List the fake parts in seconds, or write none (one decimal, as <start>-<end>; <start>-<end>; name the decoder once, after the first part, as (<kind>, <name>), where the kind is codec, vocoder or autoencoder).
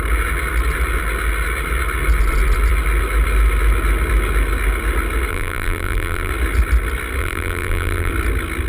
5.3-6.3 (vocoder, BigVGAN v2); 7.2-8.1